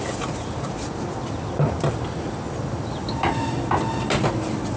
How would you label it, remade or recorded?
recorded